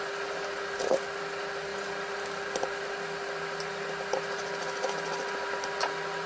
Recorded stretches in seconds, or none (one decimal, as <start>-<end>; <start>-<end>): 0.0-1.7; 3.6-6.3